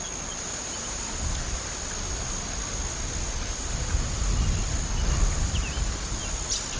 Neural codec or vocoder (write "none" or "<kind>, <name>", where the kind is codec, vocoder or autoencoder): none